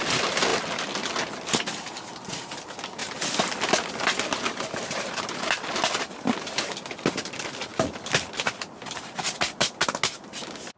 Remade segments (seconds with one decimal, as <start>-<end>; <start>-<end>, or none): none